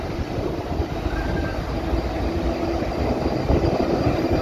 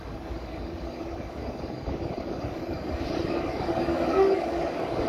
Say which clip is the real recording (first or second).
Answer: first